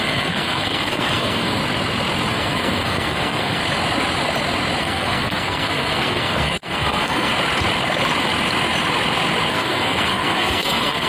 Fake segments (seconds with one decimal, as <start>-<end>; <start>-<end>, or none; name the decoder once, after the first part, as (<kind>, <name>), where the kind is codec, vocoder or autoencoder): 0.0-1.6 (codec, SNAC); 2.3-3.6; 4.8-7.3; 9.5-11.1